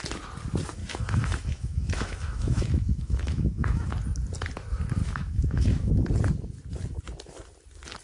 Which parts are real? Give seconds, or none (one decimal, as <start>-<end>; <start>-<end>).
0.0-0.8; 3.9-5.0; 5.9-8.0